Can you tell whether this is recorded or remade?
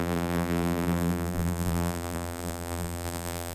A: remade